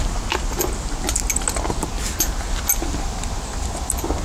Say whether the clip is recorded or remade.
recorded